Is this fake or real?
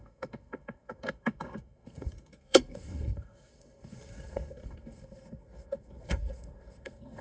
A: fake